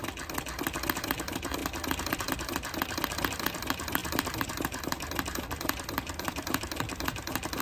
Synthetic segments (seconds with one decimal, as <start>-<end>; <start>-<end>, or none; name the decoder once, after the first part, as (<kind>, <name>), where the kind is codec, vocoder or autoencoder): 4.0-7.6 (vocoder, BigVGAN v2)